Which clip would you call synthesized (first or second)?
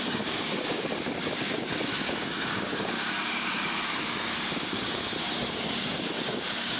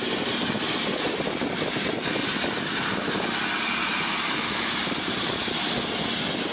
first